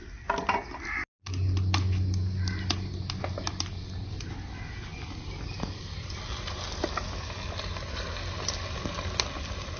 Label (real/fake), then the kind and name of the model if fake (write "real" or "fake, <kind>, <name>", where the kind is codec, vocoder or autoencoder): real